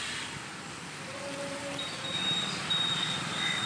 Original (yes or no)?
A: no